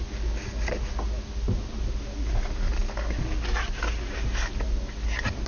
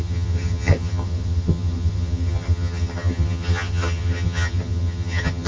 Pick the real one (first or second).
first